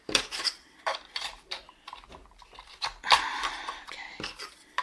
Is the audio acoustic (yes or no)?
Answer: no